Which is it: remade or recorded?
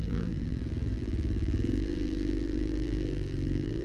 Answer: remade